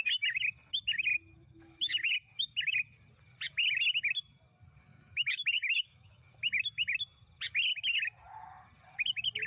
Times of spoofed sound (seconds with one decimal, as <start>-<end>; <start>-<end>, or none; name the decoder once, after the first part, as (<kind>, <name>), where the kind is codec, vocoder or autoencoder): 1.1-1.9 (autoencoder, DAC-VAE); 4.9-6.2

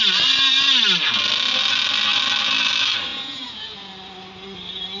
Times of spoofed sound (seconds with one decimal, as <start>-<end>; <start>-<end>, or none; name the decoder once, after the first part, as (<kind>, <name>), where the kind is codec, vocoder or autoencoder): 3.1-3.9 (vocoder, Vocos)

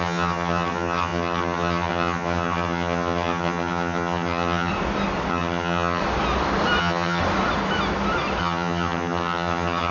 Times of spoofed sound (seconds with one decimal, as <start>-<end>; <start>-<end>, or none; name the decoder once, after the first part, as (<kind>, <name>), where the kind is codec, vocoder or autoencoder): 0.0-4.7 (vocoder, HiFi-GAN); 5.3-6.0; 6.8-7.2; 8.4-9.9